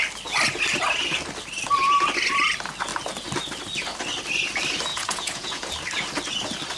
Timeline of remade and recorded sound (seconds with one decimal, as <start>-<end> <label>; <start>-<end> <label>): 0.0-4.9 recorded; 4.9-5.7 remade; 5.7-6.8 recorded